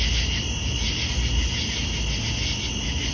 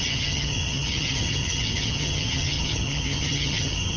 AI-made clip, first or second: second